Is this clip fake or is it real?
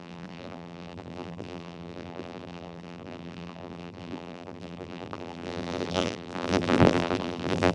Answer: fake